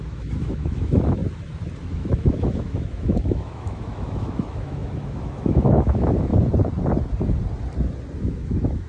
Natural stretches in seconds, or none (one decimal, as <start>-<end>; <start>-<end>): 1.2-1.8; 6.3-8.2